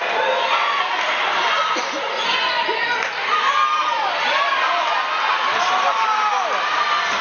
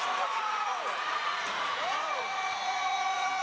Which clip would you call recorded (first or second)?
first